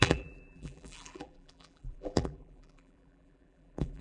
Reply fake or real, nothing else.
fake